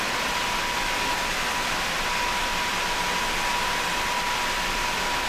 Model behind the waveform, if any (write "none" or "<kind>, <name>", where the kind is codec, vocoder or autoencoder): none